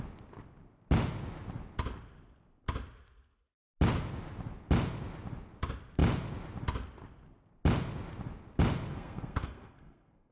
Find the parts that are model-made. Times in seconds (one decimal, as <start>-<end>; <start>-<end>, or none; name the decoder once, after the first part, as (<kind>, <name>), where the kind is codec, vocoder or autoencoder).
8.9-10.3 (codec, SNAC)